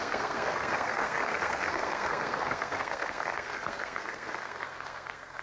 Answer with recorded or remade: remade